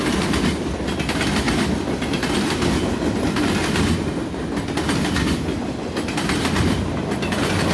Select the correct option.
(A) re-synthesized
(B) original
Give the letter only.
B